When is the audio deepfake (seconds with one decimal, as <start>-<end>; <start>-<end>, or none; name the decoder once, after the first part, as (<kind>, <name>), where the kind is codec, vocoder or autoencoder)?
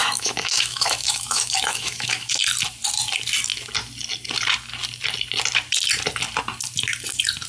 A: 0.0-2.4 (autoencoder, DAC-VAE)